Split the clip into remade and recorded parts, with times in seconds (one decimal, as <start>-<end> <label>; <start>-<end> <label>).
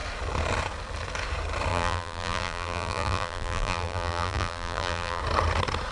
0.0-1.7 recorded; 1.7-5.2 remade; 5.2-5.9 recorded